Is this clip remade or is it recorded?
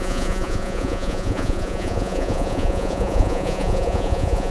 remade